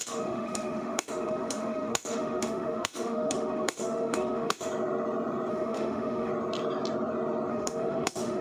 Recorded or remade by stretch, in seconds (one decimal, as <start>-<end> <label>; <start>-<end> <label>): 0.0-4.7 remade; 4.7-5.5 recorded; 5.5-6.3 remade; 6.3-7.5 recorded; 7.5-8.4 remade